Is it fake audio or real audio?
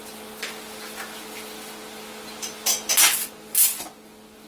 real